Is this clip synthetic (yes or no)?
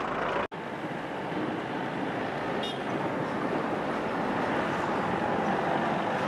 no